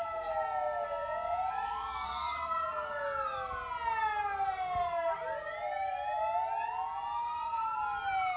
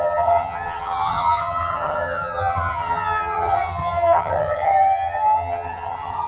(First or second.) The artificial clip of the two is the second